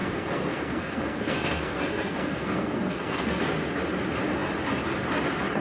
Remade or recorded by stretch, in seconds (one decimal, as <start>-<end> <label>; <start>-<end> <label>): 0.0-3.4 remade; 3.4-5.6 recorded